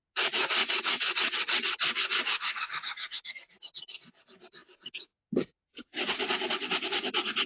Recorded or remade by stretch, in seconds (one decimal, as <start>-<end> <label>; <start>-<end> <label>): 0.0-0.6 recorded; 0.6-3.3 remade; 3.3-7.5 recorded